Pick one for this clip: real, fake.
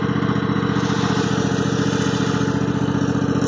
real